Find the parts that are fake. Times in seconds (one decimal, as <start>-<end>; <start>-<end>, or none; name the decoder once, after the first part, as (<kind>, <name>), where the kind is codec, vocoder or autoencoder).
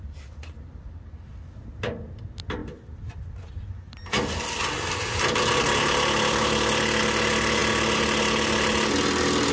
none